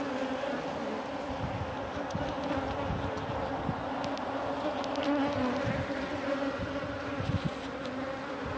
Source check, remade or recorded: recorded